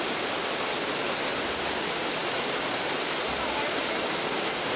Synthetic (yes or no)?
no